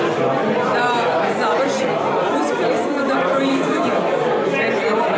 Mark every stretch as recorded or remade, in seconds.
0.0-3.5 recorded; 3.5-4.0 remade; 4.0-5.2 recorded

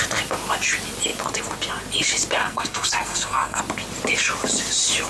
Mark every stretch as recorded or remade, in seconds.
0.0-2.4 recorded; 2.4-3.6 remade; 3.6-5.1 recorded

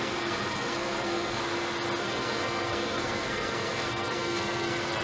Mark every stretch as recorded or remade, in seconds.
0.0-1.4 remade; 1.4-2.0 recorded; 2.0-5.0 remade

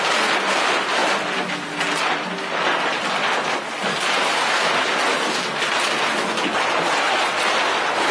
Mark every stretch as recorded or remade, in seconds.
0.0-8.1 recorded

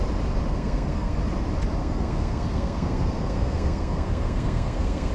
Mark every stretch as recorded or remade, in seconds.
0.0-0.5 recorded; 0.5-1.2 remade; 1.2-1.8 recorded; 1.8-5.1 remade

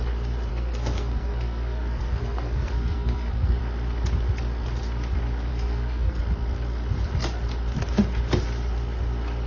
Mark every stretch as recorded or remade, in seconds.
0.0-0.5 recorded; 0.5-3.6 remade; 3.6-5.5 recorded; 5.5-6.2 remade; 6.2-9.5 recorded

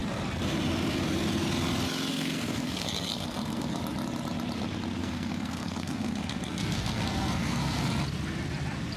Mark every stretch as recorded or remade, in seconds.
0.0-2.1 recorded; 2.1-3.8 remade; 3.8-5.0 recorded; 5.0-7.8 remade; 7.8-9.0 recorded